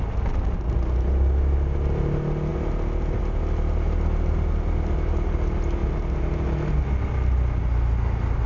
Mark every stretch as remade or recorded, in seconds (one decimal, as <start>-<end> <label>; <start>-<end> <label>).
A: 0.0-8.5 recorded